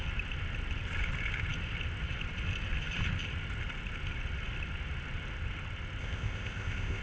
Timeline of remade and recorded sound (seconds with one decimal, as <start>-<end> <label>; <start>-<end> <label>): 0.0-6.0 recorded; 6.0-7.0 remade

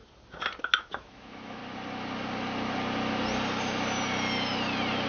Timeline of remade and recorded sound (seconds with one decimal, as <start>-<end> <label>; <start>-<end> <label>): 0.0-0.8 recorded; 0.8-1.6 remade; 1.6-5.1 recorded

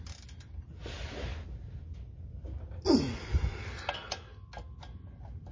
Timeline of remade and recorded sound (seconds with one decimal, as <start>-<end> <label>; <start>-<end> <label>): 0.0-5.5 recorded

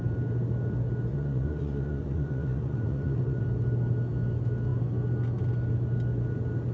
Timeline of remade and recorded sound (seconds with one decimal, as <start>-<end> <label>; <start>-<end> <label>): 0.0-1.1 recorded; 1.1-3.4 remade; 3.4-6.7 recorded

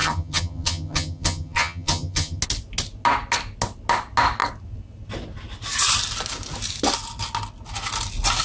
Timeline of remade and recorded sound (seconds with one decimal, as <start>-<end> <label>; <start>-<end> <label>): 0.0-2.4 remade; 2.4-8.4 recorded

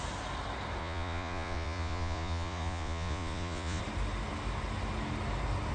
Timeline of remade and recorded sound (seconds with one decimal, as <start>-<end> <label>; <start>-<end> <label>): 0.0-0.8 recorded; 0.8-3.8 remade; 3.8-5.7 recorded